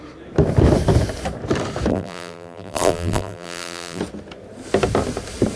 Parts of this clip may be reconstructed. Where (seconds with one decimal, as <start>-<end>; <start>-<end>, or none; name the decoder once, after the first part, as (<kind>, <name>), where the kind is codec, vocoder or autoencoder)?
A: 1.9-4.0 (vocoder, BigVGAN v2)